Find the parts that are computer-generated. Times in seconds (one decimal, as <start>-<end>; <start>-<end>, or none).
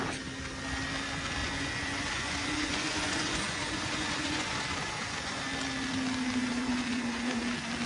1.4-5.4; 6.5-7.4